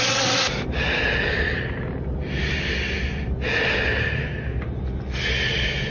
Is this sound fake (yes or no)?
no